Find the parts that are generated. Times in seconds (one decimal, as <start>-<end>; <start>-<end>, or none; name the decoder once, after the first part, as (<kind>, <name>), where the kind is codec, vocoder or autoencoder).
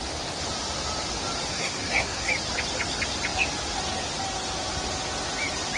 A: 1.5-2.3 (codec, SNAC)